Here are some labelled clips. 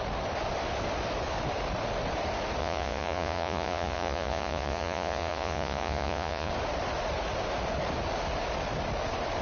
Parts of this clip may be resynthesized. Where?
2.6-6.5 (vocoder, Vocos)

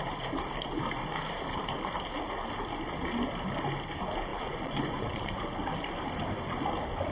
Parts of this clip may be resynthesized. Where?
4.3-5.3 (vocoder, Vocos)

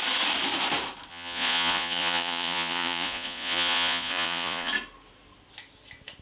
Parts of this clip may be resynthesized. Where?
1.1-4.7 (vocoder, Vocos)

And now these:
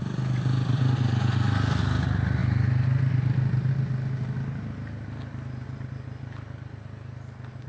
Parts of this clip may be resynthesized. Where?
none